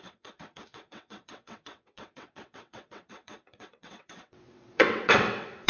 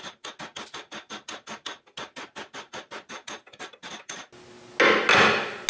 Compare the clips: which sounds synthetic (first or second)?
first